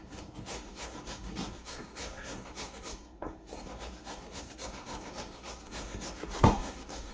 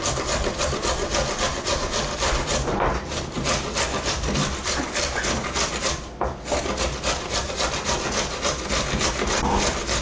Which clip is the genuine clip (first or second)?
second